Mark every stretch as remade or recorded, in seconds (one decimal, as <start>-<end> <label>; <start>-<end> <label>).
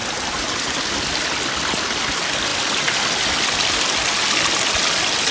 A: 0.0-5.3 recorded